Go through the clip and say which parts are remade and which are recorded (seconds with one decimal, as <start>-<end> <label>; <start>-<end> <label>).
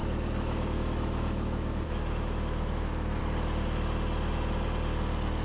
0.0-3.2 remade; 3.2-5.4 recorded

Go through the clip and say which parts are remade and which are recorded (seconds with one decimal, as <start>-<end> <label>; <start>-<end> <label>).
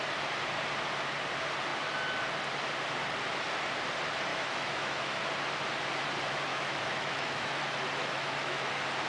0.0-4.3 recorded; 4.3-5.2 remade; 5.2-6.5 recorded; 6.5-7.6 remade; 7.6-8.0 recorded; 8.0-8.7 remade; 8.7-9.1 recorded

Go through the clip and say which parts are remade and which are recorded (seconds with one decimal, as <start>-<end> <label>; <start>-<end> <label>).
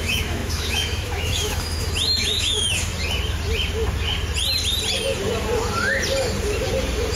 0.0-2.9 remade; 2.9-7.2 recorded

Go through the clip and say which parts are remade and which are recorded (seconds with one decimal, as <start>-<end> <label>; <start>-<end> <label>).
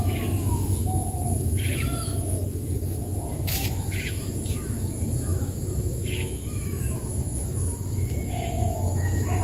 0.0-9.4 remade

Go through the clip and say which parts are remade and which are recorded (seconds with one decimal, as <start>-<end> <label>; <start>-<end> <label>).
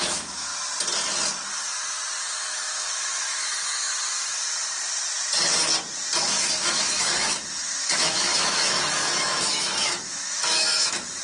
0.0-0.5 remade; 0.5-2.2 recorded; 2.2-3.9 remade; 3.9-6.2 recorded; 6.2-11.2 remade